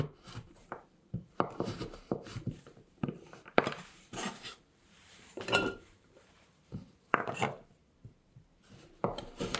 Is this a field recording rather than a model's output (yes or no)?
no